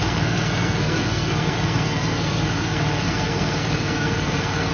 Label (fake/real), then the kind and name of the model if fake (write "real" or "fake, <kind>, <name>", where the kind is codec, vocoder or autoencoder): fake, codec, SNAC